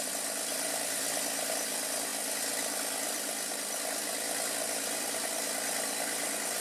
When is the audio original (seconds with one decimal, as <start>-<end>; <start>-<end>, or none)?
none